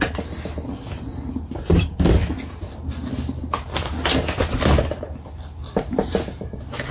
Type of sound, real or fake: real